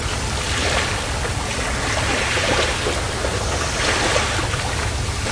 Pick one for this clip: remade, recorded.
recorded